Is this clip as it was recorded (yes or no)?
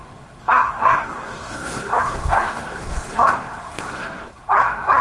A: no